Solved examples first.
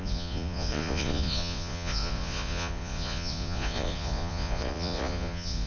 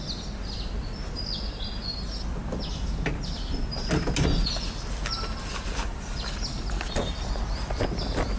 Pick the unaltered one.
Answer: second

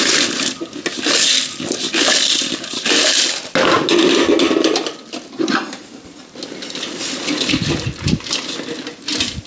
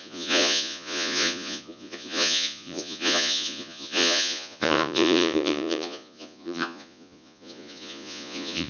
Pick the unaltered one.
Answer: first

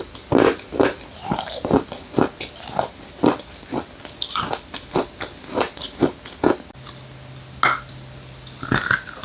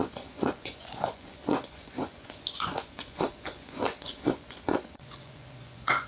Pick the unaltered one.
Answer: first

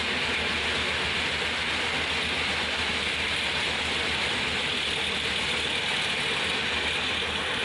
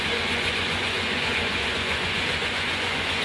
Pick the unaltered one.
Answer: first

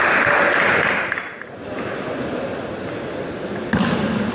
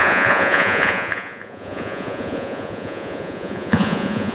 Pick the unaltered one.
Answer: first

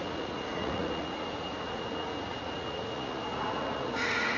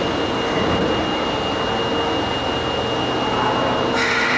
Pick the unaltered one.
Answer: second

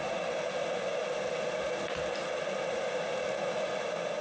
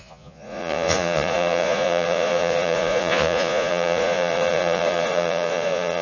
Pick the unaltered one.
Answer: first